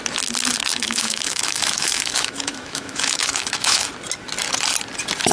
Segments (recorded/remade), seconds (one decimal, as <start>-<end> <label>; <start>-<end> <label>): 0.0-0.7 recorded; 0.7-3.9 remade; 3.9-5.3 recorded